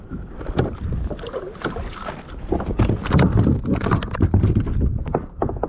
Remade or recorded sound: recorded